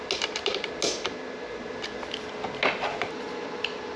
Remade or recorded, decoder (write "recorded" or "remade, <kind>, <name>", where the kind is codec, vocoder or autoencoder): recorded